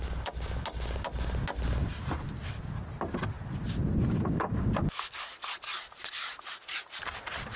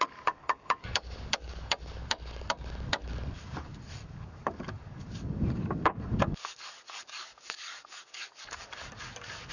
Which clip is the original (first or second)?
first